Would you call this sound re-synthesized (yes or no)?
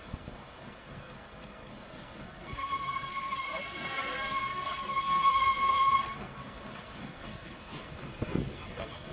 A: yes